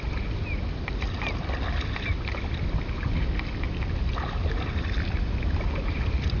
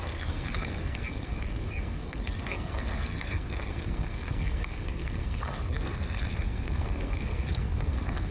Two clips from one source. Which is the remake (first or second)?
second